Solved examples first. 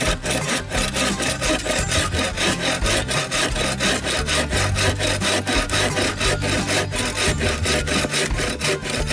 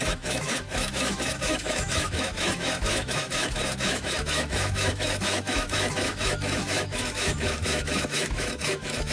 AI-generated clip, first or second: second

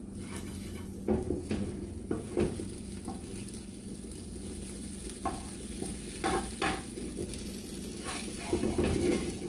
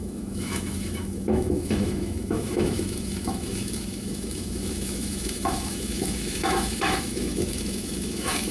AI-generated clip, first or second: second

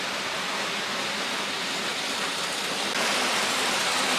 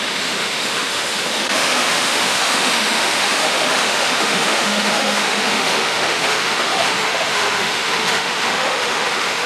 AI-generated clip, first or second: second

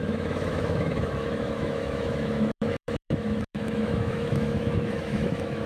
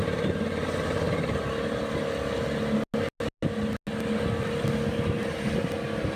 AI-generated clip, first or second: first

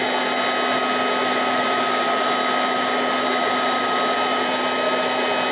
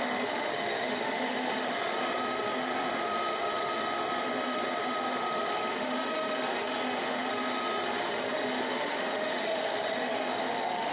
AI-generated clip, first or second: second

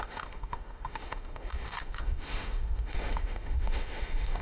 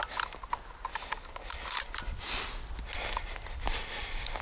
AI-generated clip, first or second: first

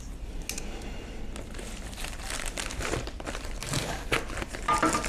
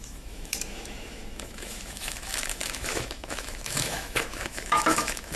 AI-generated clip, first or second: second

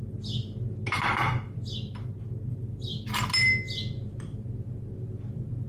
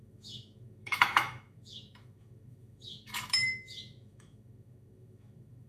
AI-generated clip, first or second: second